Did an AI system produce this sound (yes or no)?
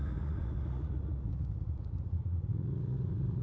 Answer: yes